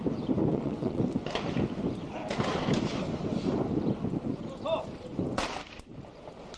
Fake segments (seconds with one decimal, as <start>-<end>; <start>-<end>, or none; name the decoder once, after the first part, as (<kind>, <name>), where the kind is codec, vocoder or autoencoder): 0.5-1.0 (vocoder, WaveNeXt)